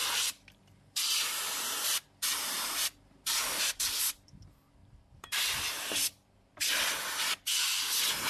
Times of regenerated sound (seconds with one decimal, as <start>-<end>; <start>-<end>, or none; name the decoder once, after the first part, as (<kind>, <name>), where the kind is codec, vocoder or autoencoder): 0.0-4.0 (vocoder, BigVGAN v2); 4.8-5.6